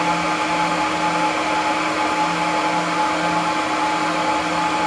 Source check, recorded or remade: recorded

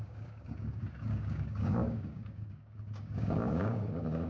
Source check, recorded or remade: remade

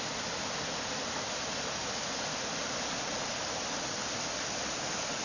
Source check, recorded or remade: recorded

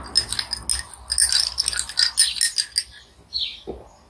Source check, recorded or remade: recorded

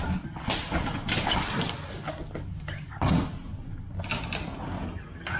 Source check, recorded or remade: recorded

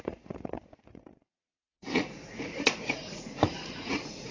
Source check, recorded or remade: remade